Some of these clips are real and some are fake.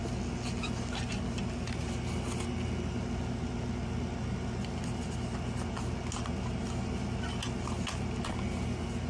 real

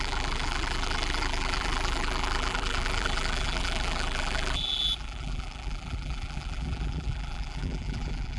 fake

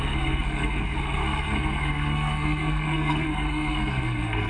fake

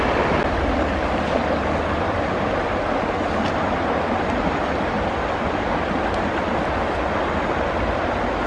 real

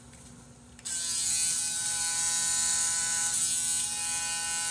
real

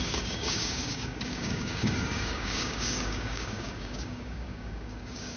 fake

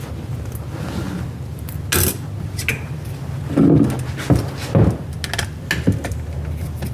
real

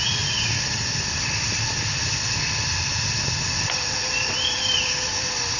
real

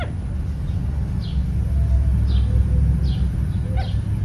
real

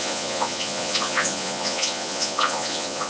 fake